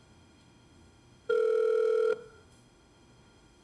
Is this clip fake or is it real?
fake